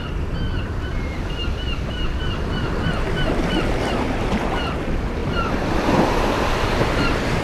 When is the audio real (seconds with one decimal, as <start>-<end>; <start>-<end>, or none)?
0.0-0.9; 2.2-5.2